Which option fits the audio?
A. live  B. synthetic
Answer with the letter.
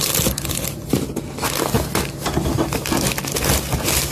A